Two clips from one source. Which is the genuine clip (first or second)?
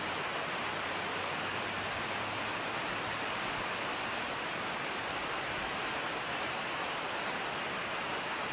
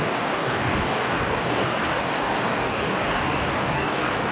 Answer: first